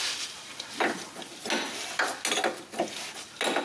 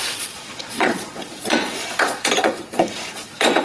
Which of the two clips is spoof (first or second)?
second